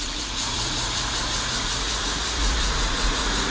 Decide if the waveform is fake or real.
fake